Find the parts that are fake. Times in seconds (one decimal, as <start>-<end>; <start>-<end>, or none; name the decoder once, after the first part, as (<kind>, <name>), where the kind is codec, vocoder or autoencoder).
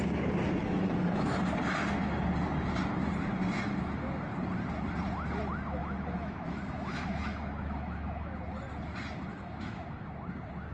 0.6-1.4 (autoencoder, DAC-VAE); 5.8-8.3; 9.3-10.1